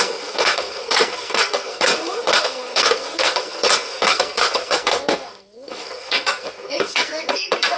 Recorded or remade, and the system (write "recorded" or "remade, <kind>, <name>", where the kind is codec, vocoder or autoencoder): remade, codec, SNAC